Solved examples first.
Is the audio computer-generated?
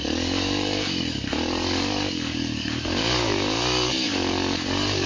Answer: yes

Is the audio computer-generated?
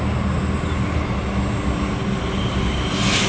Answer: no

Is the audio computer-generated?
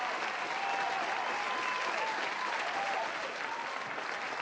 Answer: no